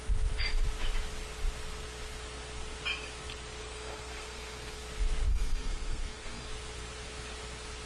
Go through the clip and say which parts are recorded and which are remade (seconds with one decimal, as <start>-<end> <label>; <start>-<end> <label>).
0.0-3.6 recorded; 3.6-4.8 remade; 4.8-5.3 recorded; 5.3-6.5 remade; 6.5-7.9 recorded